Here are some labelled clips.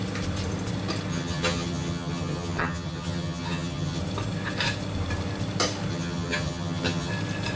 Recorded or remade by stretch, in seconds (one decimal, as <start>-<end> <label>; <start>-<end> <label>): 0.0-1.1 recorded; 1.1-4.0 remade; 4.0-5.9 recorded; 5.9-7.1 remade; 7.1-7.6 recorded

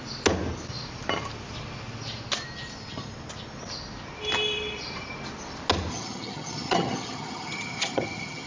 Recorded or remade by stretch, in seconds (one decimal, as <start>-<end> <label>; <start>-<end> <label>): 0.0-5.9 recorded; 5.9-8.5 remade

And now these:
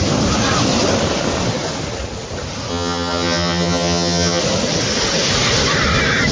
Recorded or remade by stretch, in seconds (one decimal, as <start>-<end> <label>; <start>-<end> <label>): 0.0-2.7 recorded; 2.7-4.4 remade; 4.4-6.3 recorded

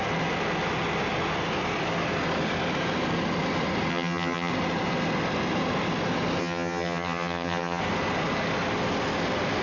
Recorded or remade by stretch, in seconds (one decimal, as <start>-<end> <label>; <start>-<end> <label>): 0.0-3.9 recorded; 3.9-4.5 remade; 4.5-6.4 recorded; 6.4-7.8 remade; 7.8-9.6 recorded

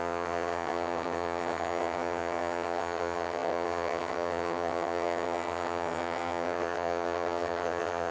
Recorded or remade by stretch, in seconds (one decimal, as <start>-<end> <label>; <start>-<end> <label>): 0.0-8.1 remade

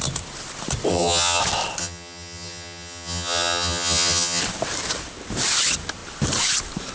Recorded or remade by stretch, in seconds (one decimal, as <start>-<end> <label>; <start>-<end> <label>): 0.0-0.9 recorded; 0.9-1.4 remade; 1.4-1.8 recorded; 1.8-4.4 remade; 4.4-6.9 recorded